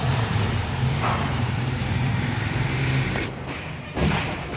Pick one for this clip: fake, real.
fake